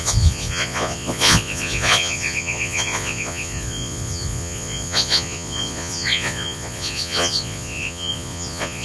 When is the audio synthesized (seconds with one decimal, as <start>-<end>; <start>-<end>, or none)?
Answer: 0.0-8.8